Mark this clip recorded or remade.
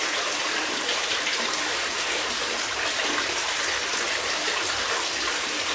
remade